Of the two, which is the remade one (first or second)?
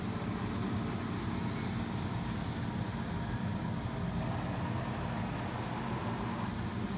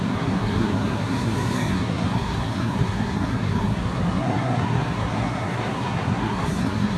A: second